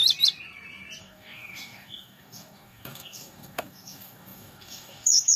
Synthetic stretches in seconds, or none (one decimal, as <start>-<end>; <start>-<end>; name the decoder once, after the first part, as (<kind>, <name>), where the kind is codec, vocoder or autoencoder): 1.0-5.4 (codec, DAC)